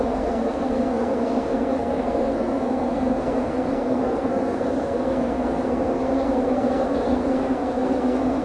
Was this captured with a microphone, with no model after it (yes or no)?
no